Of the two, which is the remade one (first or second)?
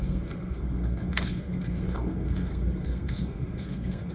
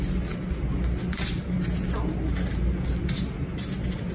first